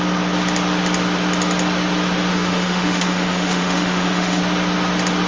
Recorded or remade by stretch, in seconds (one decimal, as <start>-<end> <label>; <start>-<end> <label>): 0.0-2.3 recorded; 2.3-4.4 remade; 4.4-5.3 recorded